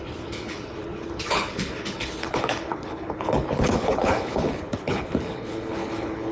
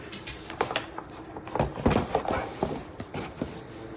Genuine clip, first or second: second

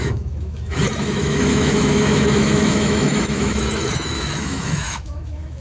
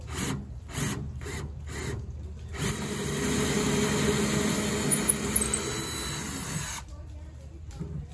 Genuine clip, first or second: second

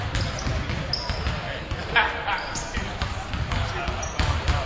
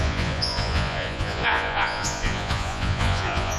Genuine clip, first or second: first